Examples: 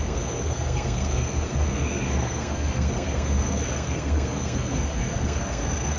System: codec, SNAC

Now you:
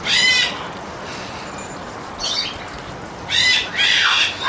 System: none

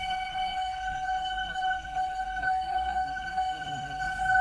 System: codec, SNAC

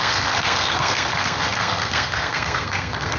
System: codec, SNAC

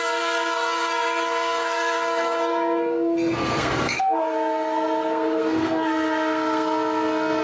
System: codec, SNAC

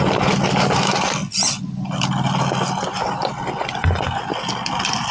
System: none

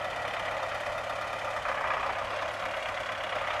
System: none